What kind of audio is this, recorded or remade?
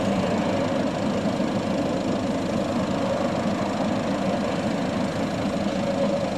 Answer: recorded